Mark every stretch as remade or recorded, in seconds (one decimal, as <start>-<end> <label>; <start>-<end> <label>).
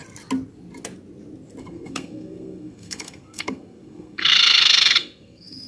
0.0-1.6 recorded; 1.6-5.7 remade